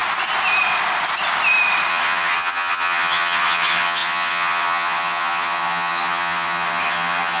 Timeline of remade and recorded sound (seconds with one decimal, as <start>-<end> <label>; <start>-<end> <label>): 0.0-1.9 recorded; 1.9-7.4 remade